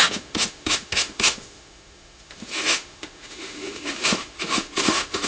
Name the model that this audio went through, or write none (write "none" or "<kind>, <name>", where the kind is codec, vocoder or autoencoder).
autoencoder, DAC-VAE